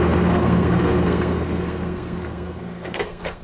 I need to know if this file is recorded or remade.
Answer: remade